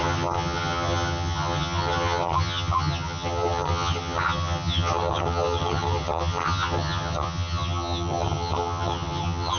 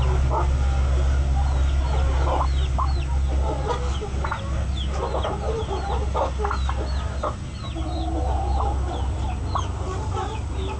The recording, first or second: second